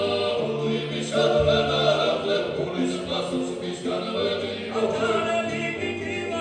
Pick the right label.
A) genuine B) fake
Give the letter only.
A